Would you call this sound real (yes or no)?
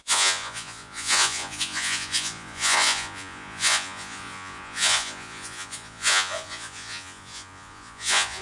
no